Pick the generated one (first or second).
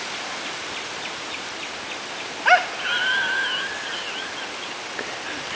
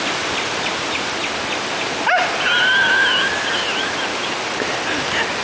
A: first